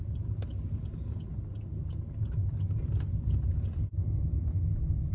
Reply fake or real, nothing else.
real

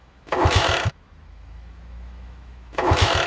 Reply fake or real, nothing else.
fake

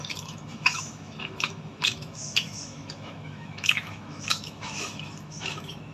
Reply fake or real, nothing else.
fake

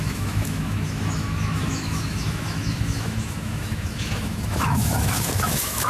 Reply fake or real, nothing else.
fake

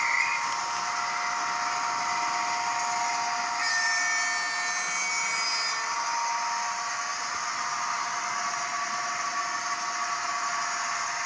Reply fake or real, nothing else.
real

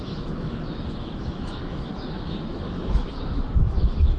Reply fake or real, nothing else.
fake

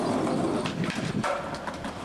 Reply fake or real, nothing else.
real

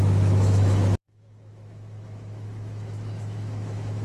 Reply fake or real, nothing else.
fake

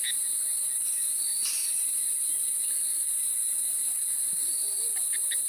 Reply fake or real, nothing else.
real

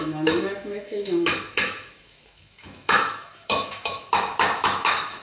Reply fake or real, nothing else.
fake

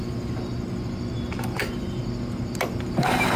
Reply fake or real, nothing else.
real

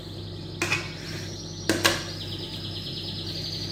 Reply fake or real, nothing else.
real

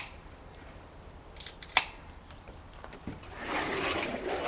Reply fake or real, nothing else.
real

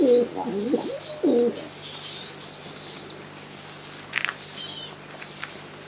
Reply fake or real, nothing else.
real